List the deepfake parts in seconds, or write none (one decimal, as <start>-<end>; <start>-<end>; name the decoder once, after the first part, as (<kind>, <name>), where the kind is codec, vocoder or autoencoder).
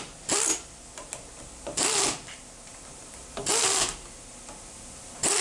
none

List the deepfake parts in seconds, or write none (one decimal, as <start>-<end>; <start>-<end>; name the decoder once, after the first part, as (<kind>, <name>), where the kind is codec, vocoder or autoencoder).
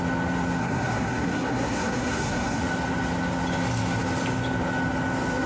0.6-2.6 (codec, SNAC)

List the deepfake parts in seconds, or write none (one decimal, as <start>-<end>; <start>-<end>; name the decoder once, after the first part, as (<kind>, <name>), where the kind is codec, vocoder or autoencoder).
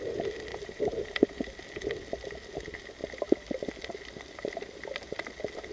0.5-1.4 (vocoder, BigVGAN v2)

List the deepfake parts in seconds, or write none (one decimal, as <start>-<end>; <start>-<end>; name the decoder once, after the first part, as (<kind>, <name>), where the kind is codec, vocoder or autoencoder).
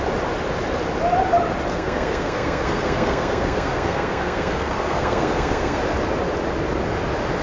1.7-5.8 (codec, SNAC)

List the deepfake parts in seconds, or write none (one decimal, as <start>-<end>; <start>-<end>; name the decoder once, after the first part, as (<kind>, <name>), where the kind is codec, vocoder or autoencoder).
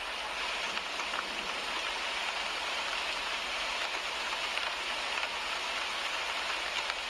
none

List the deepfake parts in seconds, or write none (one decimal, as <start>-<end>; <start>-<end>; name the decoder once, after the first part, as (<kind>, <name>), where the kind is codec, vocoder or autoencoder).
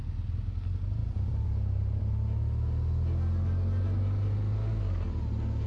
1.0-2.0 (vocoder, BigVGAN v2)